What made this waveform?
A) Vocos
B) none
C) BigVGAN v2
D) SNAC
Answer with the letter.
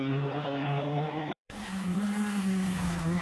D